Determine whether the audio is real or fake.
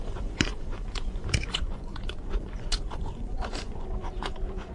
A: fake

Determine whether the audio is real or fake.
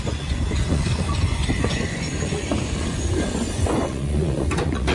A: fake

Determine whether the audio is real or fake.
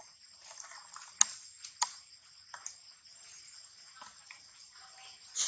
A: real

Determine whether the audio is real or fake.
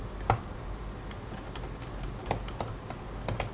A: real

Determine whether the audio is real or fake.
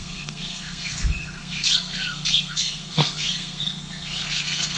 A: fake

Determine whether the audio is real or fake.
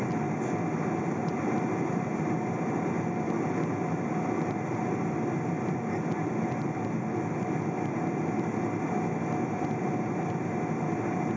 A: real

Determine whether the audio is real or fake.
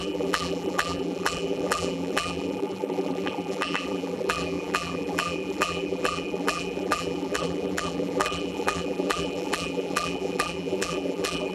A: fake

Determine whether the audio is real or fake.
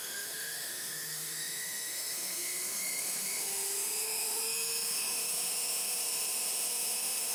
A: fake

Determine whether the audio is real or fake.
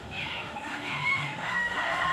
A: fake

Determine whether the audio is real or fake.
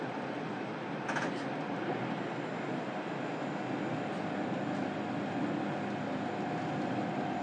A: real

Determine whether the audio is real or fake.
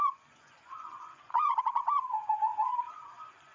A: fake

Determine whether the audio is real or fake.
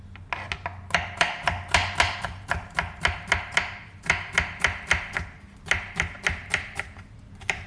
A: real